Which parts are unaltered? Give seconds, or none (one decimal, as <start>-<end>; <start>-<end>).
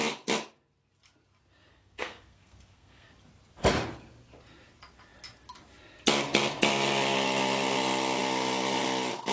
0.0-1.7; 3.1-9.3